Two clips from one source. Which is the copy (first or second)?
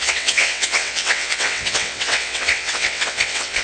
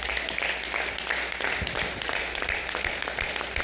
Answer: first